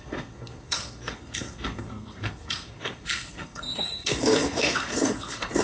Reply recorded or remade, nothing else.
remade